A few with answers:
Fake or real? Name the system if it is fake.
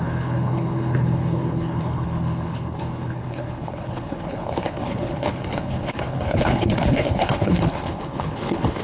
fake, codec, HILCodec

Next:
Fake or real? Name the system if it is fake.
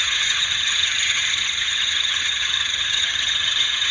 fake, vocoder, HiFi-GAN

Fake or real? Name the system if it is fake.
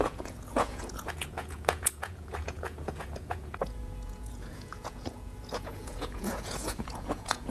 fake, vocoder, Vocos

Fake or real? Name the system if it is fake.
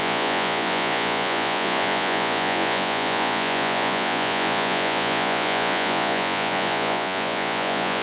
fake, vocoder, Vocos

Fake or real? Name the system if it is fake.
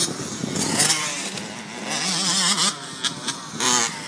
real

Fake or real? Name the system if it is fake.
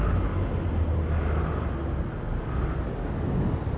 real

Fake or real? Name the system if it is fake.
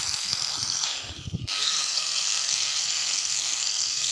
fake, codec, SNAC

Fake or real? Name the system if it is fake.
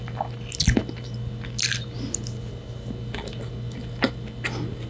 real